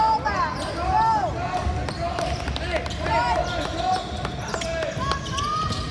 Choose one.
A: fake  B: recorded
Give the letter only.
B